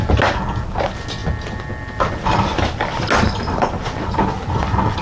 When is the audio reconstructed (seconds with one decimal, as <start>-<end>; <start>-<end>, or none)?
none

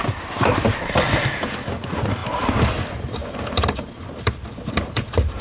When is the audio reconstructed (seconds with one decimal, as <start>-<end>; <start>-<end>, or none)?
0.0-5.4

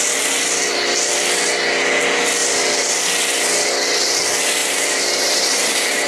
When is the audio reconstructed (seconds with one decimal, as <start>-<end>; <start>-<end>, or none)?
2.4-2.9; 4.6-6.1

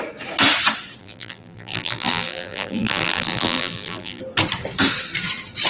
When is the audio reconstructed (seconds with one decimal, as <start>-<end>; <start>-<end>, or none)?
1.0-4.2

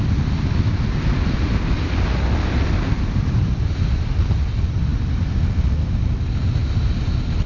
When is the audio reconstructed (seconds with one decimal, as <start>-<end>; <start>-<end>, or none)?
6.6-7.5